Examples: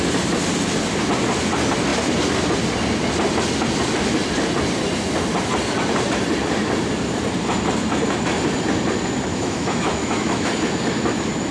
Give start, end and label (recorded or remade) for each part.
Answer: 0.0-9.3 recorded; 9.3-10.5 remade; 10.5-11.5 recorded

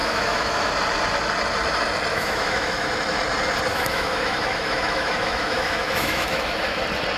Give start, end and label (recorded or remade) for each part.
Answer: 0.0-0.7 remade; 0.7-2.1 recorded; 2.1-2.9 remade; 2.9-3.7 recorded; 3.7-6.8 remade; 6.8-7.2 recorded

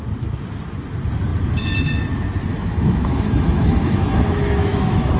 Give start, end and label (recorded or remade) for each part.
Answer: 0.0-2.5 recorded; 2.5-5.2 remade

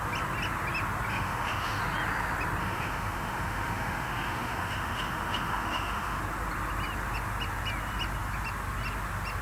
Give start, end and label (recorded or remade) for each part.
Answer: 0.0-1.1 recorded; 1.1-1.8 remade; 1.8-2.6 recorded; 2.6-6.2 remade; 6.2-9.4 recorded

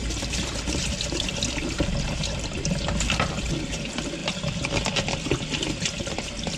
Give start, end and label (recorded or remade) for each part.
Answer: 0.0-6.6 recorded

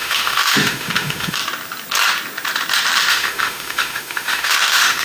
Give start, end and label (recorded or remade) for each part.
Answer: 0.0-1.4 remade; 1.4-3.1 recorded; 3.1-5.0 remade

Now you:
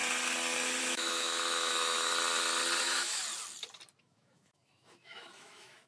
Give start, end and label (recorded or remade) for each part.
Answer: 0.0-0.8 recorded; 0.8-2.1 remade; 2.1-2.8 recorded; 2.8-3.2 remade; 3.2-4.0 recorded; 4.0-5.9 remade

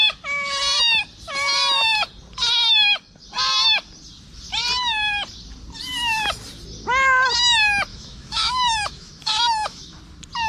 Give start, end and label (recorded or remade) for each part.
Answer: 0.0-7.9 recorded; 7.9-10.0 remade; 10.0-10.5 recorded